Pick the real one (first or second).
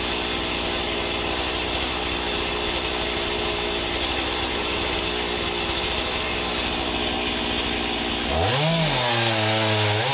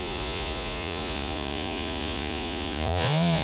first